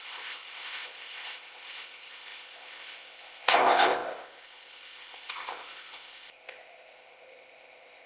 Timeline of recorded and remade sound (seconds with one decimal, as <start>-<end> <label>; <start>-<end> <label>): 0.0-8.1 remade